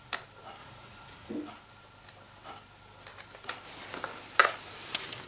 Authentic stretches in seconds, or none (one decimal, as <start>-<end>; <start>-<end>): 0.0-0.6; 1.3-5.3